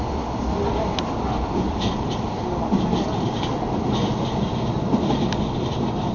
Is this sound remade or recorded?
recorded